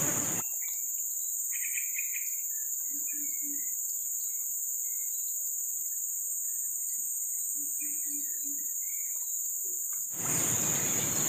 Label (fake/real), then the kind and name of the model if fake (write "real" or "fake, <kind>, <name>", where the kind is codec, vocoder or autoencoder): real